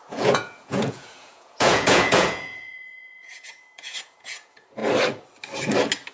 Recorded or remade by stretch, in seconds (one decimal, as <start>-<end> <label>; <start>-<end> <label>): 0.0-4.8 remade; 4.8-6.1 recorded

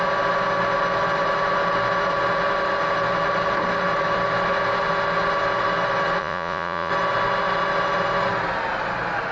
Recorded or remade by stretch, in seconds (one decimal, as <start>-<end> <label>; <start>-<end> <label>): 0.0-6.2 recorded; 6.2-6.9 remade; 6.9-9.3 recorded